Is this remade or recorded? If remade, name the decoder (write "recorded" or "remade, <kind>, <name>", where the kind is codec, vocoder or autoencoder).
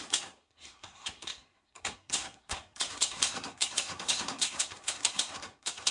remade, codec, SNAC